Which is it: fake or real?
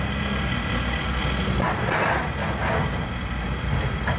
real